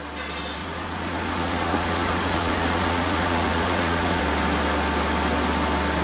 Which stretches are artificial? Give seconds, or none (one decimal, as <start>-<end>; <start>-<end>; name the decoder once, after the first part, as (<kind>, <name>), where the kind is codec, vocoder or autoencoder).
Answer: 0.6-4.2 (vocoder, Vocos)